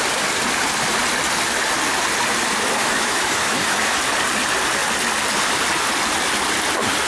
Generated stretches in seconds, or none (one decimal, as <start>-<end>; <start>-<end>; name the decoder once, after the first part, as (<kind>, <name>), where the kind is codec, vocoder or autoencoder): 2.8-4.0 (autoencoder, DAC-VAE)